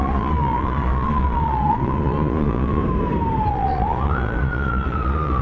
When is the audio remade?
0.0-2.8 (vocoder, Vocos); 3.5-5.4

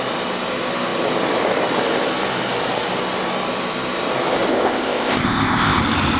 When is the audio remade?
4.5-5.8 (codec, ZipCodec)